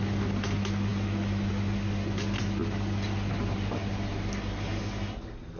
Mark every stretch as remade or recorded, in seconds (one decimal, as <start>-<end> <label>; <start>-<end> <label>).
0.0-5.6 recorded